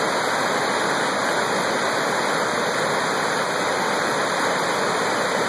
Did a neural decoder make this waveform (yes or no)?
no